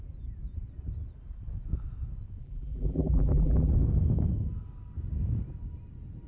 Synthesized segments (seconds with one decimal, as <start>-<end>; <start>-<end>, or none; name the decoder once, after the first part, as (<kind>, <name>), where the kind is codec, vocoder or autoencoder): 2.4-3.7 (vocoder, BigVGAN v2)